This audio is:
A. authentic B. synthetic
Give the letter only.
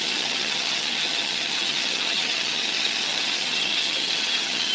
B